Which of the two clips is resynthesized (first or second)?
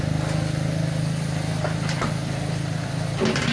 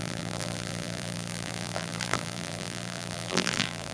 second